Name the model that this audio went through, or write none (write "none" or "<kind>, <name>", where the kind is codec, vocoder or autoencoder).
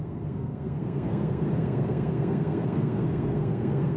codec, SNAC